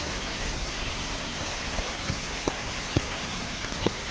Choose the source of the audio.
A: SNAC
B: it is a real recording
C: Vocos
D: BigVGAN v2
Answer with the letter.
A